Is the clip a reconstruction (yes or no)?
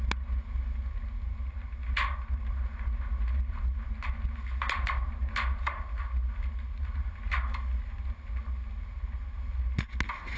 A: no